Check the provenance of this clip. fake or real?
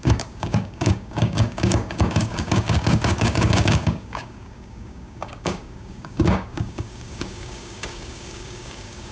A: fake